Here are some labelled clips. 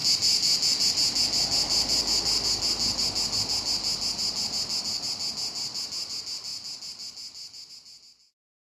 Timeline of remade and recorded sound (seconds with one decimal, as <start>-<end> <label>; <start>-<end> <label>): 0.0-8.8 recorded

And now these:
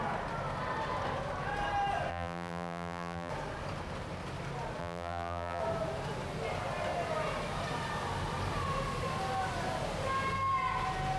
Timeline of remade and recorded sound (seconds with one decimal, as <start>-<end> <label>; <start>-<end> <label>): 0.0-2.1 recorded; 2.1-3.3 remade; 3.3-4.8 recorded; 4.8-5.6 remade; 5.6-11.2 recorded

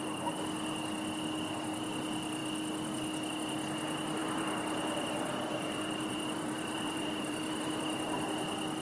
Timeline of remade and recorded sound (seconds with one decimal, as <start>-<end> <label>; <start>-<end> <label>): 0.0-4.2 recorded; 4.2-7.6 remade; 7.6-8.8 recorded

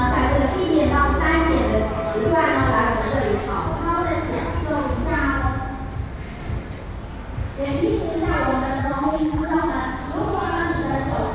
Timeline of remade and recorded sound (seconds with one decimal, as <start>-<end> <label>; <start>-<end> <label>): 0.0-8.8 recorded; 8.8-9.7 remade; 9.7-11.3 recorded